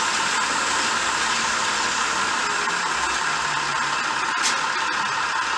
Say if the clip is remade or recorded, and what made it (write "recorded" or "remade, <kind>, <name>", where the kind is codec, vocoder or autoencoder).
recorded